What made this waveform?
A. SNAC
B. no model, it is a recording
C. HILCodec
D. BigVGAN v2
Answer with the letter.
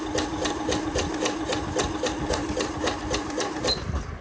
B